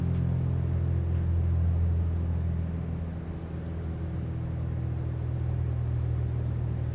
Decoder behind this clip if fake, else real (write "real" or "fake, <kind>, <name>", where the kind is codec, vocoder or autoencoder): real